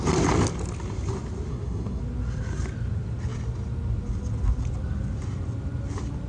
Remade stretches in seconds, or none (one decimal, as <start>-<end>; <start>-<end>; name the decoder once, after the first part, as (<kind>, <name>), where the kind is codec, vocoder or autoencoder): 1.5-2.0 (codec, SNAC)